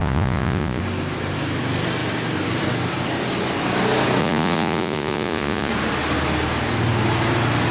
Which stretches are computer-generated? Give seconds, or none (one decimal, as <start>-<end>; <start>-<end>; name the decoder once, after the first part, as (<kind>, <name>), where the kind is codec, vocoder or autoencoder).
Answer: 0.0-0.8 (vocoder, Vocos); 4.2-5.7

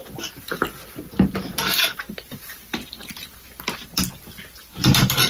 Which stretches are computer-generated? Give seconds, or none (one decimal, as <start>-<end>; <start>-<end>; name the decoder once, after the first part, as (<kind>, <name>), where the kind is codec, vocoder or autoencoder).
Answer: 1.5-3.5 (vocoder, BigVGAN v2)

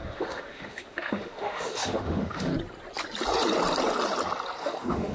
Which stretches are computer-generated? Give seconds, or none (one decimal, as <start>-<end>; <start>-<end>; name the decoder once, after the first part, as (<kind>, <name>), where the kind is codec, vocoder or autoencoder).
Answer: 0.0-2.5 (autoencoder, DAC-VAE); 4.6-5.1

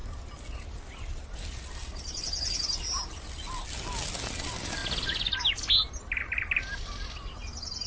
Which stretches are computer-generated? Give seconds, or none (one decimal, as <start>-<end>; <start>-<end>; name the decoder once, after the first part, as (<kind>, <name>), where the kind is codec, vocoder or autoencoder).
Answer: none